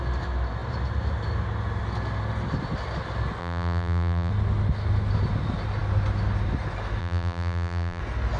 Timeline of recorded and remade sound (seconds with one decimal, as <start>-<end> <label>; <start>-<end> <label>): 0.0-3.4 recorded; 3.4-4.3 remade; 4.3-7.0 recorded; 7.0-8.0 remade; 8.0-8.4 recorded